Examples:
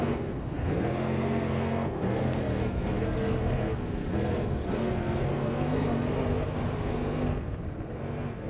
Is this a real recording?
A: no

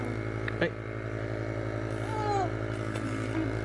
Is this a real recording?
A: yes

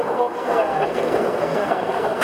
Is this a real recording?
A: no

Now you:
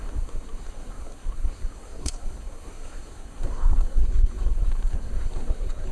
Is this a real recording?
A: no